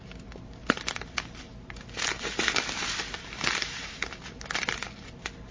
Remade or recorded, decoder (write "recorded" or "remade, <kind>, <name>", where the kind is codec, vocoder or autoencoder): recorded